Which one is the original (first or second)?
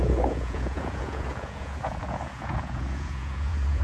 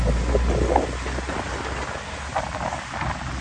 second